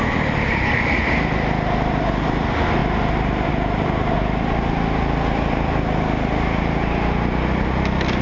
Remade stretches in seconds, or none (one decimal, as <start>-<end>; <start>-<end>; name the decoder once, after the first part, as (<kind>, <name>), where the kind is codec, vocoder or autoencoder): none